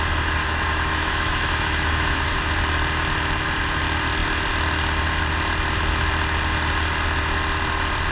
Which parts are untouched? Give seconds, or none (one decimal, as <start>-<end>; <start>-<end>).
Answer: 0.0-0.4; 2.4-8.1